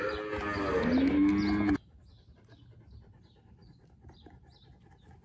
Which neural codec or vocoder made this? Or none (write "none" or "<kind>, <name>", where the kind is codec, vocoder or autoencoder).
none